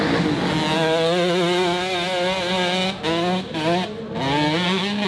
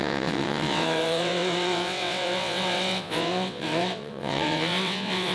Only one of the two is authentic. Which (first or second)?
first